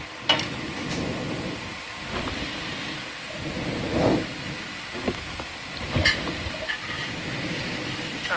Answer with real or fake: real